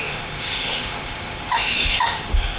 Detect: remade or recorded remade